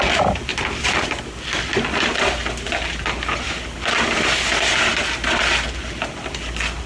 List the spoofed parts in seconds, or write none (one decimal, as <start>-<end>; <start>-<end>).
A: none